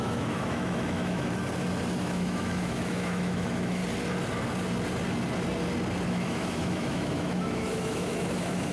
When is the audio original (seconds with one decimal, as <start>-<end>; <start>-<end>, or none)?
1.4-2.0; 3.8-6.1